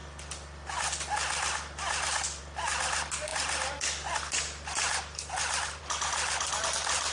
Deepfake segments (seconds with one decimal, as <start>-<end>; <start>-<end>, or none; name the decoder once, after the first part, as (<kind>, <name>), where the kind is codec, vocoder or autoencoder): none